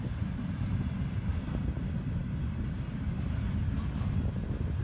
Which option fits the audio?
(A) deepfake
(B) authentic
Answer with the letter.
B